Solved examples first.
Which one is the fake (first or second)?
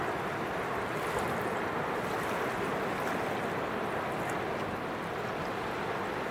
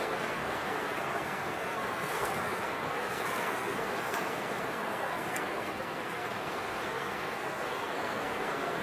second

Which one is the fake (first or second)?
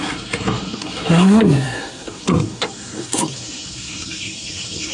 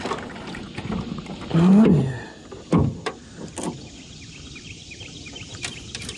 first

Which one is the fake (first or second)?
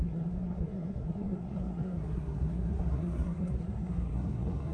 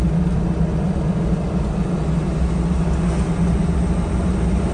first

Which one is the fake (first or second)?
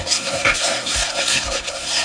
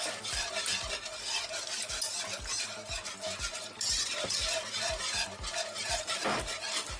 first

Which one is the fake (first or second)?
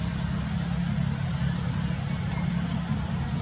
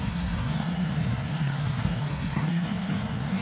second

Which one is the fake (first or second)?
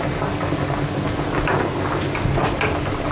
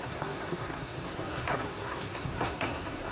second